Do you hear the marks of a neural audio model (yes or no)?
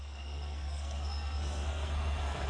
yes